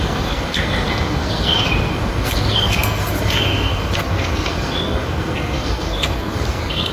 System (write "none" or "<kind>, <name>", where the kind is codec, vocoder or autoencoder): codec, SNAC